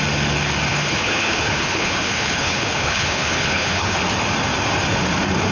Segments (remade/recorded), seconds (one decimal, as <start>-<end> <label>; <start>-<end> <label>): 0.0-0.7 recorded; 0.7-4.0 remade; 4.0-5.5 recorded

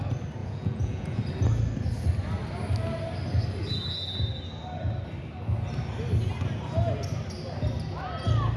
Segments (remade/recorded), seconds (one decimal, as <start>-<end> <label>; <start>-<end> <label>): 0.0-0.4 recorded; 0.4-1.2 remade; 1.2-8.6 recorded

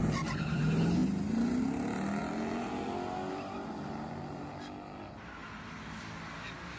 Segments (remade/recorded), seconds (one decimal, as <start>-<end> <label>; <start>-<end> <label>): 0.0-6.8 recorded

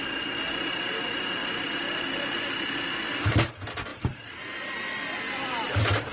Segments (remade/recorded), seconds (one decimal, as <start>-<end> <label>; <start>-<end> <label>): 0.0-6.1 recorded

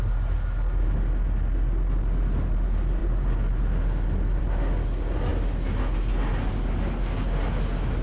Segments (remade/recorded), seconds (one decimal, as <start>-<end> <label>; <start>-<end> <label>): 0.0-8.0 recorded

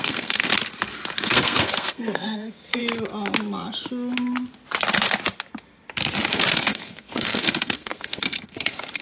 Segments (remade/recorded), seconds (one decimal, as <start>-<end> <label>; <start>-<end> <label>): 0.0-0.5 remade; 0.5-1.2 recorded; 1.2-2.8 remade; 2.8-6.3 recorded; 6.3-9.0 remade